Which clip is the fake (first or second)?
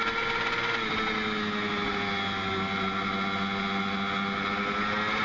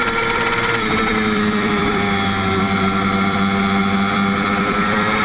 second